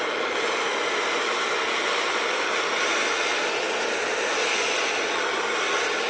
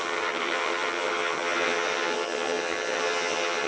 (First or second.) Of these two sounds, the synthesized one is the second